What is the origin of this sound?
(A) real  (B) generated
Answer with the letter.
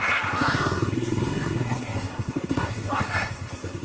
B